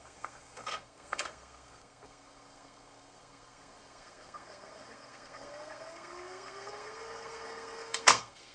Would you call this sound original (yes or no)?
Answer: no